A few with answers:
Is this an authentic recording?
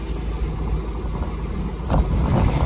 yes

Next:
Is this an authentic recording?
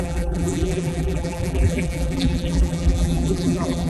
no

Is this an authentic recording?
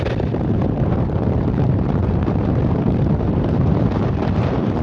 no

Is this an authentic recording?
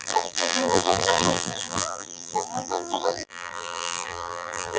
no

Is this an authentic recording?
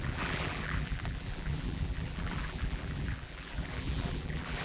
no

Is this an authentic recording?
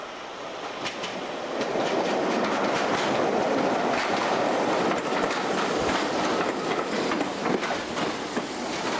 no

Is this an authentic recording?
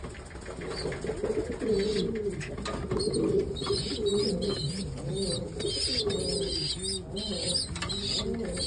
yes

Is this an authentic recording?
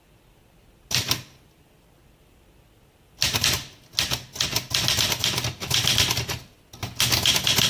yes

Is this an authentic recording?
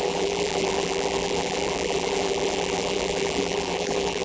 no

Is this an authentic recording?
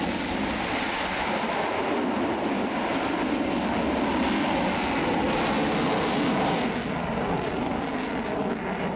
yes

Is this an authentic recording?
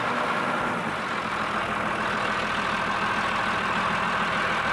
yes